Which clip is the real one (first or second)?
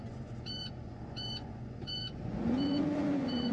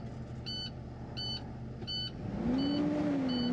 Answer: second